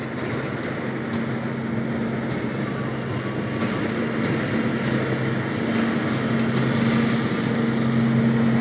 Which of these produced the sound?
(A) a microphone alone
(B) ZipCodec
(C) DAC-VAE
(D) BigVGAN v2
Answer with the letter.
A